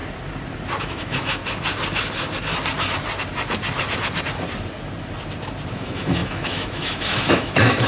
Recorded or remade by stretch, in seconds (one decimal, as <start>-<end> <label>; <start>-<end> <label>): 0.0-0.8 recorded; 0.8-1.4 remade; 1.4-5.7 recorded; 5.7-7.9 remade